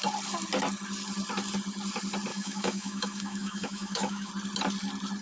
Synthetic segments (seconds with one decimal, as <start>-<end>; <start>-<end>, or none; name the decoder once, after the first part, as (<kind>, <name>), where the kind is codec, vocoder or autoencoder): 2.3-4.3 (autoencoder, DAC-VAE)